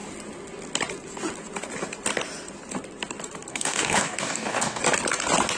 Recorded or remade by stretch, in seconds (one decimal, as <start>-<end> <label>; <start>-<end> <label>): 0.0-3.5 recorded; 3.5-4.8 remade; 4.8-5.6 recorded